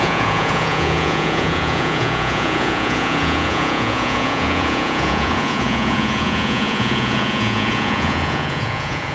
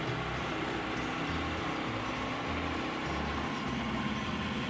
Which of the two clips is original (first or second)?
second